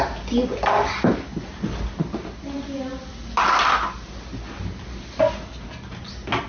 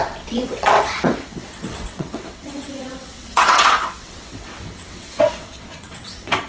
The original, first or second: first